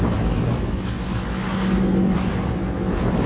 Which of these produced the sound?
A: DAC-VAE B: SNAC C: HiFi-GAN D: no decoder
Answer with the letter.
D